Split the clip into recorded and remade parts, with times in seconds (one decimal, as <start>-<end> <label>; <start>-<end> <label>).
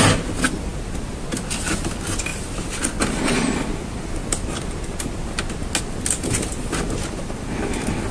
0.0-8.1 recorded